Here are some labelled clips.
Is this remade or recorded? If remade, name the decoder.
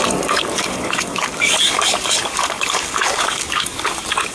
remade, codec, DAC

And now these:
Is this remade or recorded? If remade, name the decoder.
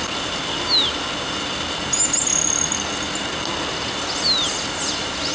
recorded